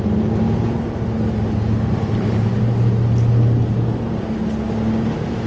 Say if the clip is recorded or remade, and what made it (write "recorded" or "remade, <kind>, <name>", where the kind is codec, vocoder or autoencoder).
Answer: recorded